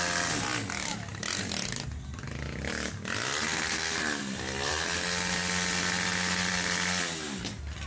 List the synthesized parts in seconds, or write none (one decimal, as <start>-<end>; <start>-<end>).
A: none